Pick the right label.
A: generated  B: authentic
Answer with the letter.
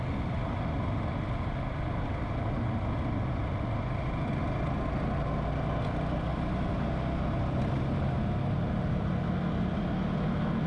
B